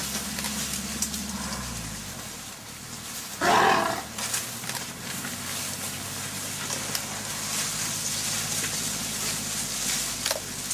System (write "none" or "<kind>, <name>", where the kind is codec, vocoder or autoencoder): none